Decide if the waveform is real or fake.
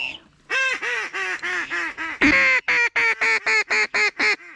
real